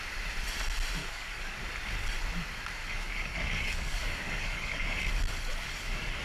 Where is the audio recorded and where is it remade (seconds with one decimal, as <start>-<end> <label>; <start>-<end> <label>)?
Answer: 0.0-1.0 recorded; 1.0-1.6 remade; 1.6-2.8 recorded; 2.8-5.0 remade; 5.0-5.5 recorded; 5.5-6.2 remade